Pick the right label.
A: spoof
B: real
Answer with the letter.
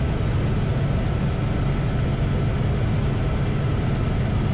B